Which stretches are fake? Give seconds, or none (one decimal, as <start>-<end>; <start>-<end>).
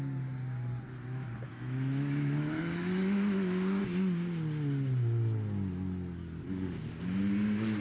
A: 1.5-3.8